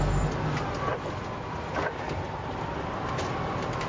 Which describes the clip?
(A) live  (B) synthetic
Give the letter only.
A